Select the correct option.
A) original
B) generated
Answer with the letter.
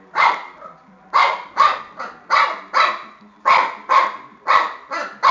A